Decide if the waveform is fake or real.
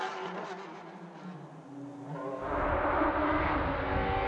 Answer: real